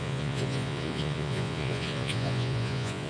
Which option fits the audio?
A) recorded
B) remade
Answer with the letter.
B